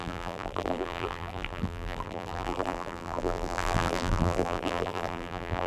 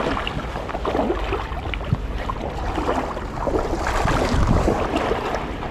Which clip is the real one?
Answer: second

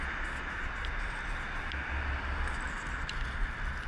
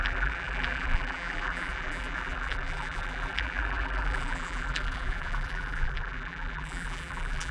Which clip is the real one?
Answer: first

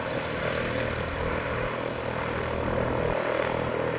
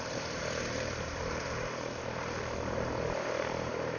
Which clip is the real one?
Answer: first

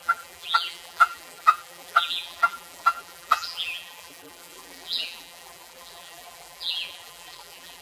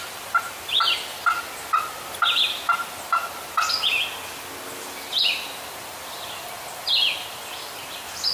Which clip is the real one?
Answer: second